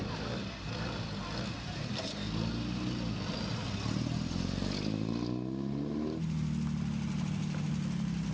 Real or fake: real